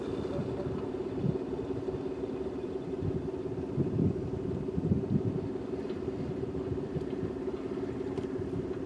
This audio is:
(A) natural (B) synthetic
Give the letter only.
B